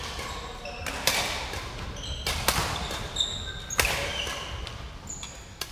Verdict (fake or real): real